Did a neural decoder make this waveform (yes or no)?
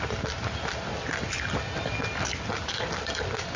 no